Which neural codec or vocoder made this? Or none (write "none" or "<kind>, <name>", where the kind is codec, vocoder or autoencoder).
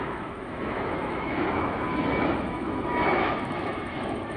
autoencoder, DAC-VAE